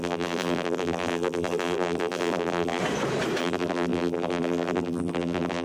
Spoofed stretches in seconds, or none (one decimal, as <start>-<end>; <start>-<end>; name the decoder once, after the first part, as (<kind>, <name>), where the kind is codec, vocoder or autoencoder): 0.0-2.8 (vocoder, BigVGAN v2); 3.4-5.6